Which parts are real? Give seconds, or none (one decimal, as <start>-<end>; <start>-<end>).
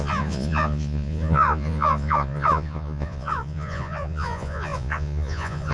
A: none